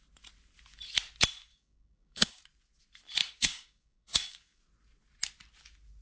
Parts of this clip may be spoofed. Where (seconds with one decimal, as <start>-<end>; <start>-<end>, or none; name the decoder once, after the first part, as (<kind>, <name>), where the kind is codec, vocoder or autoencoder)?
1.5-2.4 (codec, DAC); 3.2-4.6